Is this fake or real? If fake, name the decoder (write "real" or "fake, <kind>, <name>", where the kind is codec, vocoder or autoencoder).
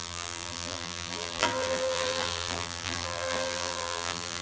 fake, vocoder, BigVGAN v2